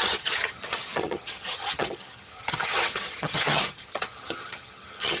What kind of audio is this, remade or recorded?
remade